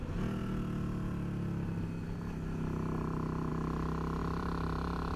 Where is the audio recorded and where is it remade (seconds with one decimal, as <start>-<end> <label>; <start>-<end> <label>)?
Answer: 0.0-4.2 recorded; 4.2-5.2 remade